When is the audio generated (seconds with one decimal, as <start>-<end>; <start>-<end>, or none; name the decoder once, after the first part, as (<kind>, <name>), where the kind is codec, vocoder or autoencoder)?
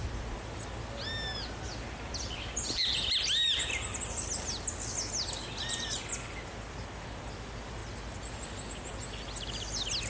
none